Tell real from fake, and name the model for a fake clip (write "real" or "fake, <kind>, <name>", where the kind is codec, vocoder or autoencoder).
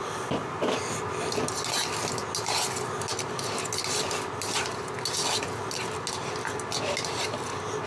real